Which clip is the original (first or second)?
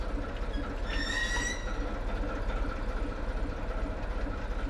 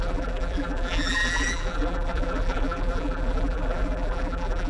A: first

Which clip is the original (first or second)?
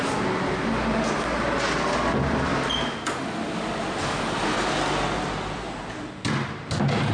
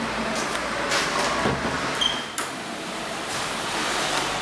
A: first